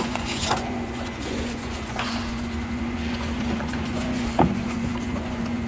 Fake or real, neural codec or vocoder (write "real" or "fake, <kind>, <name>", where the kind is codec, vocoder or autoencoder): fake, vocoder, Vocos